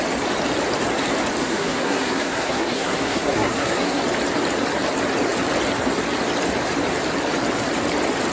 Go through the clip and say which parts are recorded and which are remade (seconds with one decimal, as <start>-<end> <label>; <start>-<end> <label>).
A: 0.0-1.4 recorded; 1.4-4.0 remade; 4.0-8.3 recorded